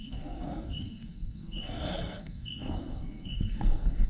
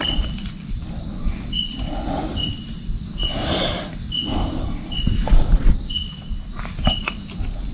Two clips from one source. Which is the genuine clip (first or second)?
second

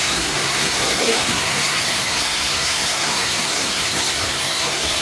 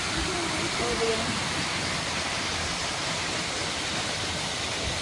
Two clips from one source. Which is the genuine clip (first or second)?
second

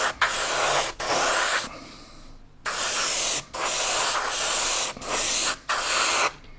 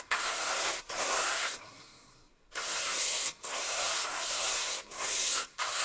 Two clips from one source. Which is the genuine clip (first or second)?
first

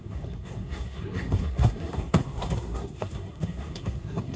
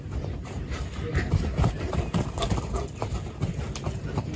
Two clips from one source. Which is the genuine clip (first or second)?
second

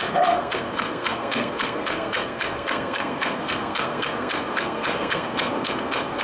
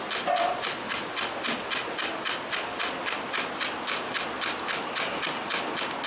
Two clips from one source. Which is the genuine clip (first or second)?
second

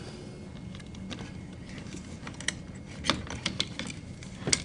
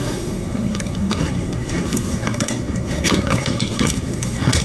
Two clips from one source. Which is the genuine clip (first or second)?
first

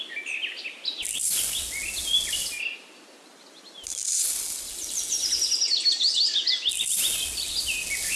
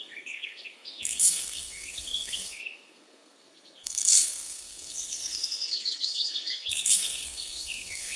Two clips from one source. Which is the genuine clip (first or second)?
first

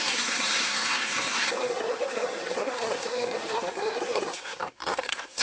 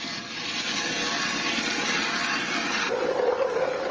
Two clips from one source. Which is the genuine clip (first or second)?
second